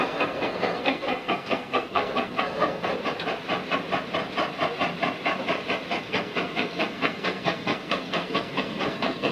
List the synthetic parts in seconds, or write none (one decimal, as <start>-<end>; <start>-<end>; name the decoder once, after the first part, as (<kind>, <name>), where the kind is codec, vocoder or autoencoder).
0.0-2.9 (codec, SNAC); 6.0-9.3

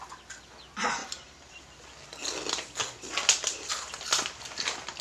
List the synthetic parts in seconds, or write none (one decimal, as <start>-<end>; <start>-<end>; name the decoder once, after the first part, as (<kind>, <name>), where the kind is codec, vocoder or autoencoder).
1.0-1.6 (vocoder, BigVGAN v2); 3.5-4.0

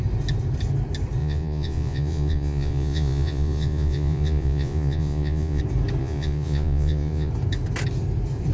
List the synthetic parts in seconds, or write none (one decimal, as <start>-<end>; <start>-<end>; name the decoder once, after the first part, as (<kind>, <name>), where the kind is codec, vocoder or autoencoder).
1.2-5.6 (vocoder, Vocos); 6.0-7.3

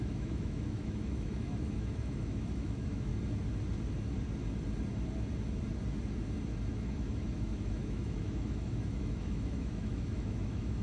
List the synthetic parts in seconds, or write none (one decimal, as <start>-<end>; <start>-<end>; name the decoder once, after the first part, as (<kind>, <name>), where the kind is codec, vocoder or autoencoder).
0.0-3.1 (autoencoder, DAC-VAE); 6.7-10.8

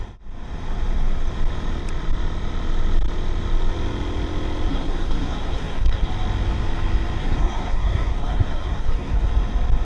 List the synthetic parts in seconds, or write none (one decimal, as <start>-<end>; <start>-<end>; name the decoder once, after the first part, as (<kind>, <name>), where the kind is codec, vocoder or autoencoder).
4.7-6.1 (codec, SNAC); 7.2-9.3

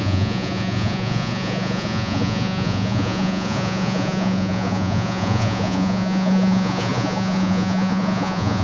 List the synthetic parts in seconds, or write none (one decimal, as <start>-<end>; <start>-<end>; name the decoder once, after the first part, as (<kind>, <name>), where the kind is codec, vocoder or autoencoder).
0.0-8.6 (vocoder, Vocos)

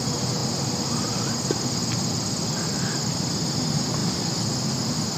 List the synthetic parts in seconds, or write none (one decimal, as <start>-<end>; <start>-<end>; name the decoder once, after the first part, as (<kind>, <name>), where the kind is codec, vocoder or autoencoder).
none

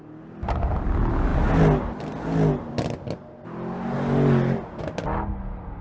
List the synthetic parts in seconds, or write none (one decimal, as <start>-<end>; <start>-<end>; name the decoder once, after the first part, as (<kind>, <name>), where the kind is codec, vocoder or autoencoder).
none